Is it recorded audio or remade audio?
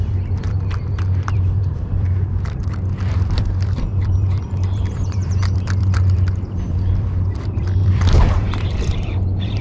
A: remade